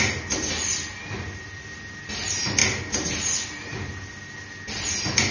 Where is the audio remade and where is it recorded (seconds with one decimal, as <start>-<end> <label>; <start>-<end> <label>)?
0.0-5.3 recorded